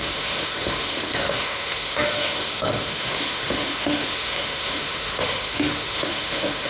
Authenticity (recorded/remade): remade